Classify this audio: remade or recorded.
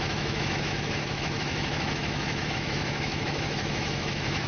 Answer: remade